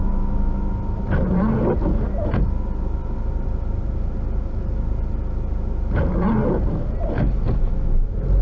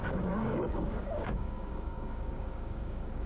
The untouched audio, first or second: first